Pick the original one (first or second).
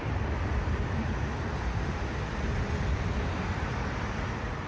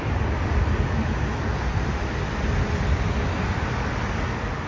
second